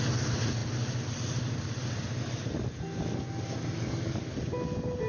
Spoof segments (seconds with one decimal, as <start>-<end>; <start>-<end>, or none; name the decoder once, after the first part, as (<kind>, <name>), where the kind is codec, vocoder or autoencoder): none